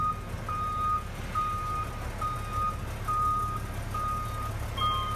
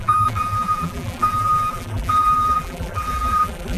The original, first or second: first